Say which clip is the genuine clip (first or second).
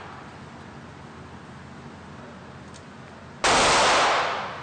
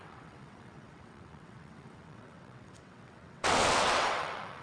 first